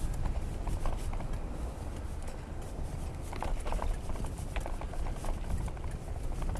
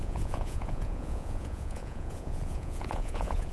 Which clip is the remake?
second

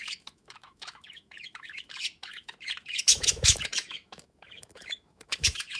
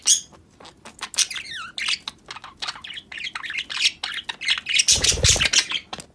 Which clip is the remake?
first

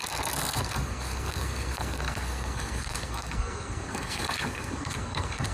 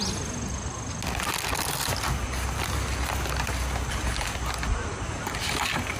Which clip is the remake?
first